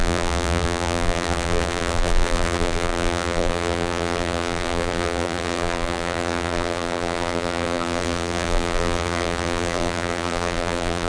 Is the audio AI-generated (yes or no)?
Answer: yes